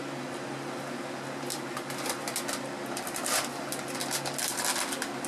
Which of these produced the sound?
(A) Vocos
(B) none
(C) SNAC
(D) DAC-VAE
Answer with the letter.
B